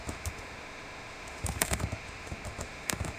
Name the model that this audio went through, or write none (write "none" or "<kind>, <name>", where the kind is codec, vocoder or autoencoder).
autoencoder, DAC-VAE